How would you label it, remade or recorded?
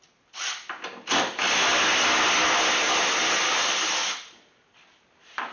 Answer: recorded